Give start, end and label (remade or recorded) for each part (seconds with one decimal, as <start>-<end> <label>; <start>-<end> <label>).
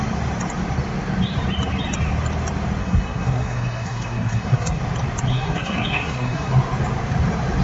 0.0-2.8 recorded; 2.8-4.8 remade; 4.8-5.3 recorded; 5.3-6.5 remade; 6.5-7.6 recorded